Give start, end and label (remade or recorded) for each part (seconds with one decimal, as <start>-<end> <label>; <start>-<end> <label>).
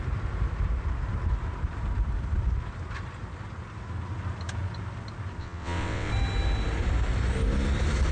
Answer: 0.0-5.4 recorded; 5.4-6.1 remade; 6.1-8.1 recorded